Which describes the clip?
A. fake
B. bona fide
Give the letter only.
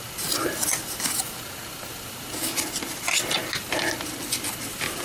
B